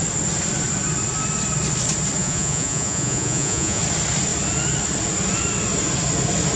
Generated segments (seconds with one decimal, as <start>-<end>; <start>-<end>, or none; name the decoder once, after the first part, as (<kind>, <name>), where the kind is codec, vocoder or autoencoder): 2.2-3.8 (vocoder, Vocos)